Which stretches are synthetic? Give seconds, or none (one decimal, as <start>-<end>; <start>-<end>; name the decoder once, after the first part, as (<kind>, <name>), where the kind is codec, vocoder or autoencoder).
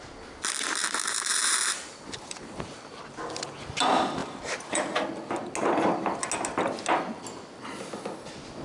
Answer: 0.8-2.6 (vocoder, BigVGAN v2); 4.2-5.0